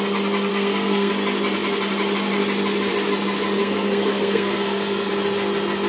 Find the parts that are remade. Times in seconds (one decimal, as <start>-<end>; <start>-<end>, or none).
0.5-1.1; 3.6-5.1